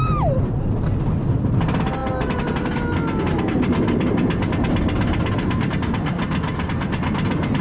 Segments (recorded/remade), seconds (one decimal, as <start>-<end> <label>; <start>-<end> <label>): 0.0-7.6 recorded